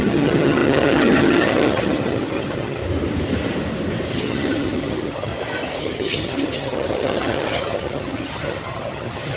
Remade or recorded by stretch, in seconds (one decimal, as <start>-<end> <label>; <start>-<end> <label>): 0.0-2.8 remade; 2.8-4.1 recorded; 4.1-5.3 remade; 5.3-5.8 recorded; 5.8-9.4 remade